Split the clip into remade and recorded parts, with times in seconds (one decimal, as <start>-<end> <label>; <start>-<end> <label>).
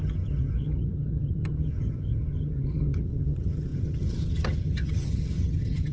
0.0-5.9 remade